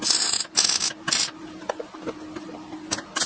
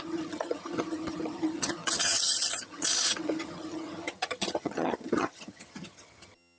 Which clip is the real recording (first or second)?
first